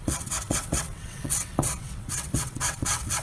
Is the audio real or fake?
fake